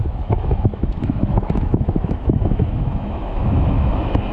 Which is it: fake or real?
fake